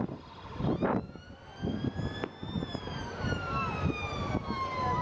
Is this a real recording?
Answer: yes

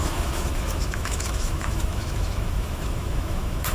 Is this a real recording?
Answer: no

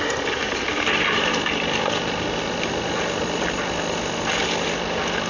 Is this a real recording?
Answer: yes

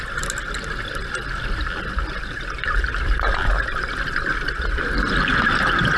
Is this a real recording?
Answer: yes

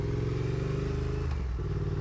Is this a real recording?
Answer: yes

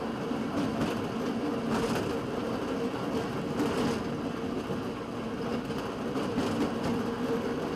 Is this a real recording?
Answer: yes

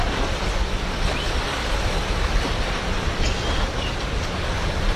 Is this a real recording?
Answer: yes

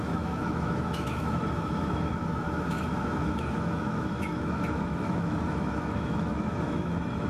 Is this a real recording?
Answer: no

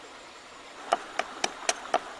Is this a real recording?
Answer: yes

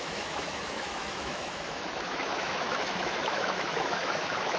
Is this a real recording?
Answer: no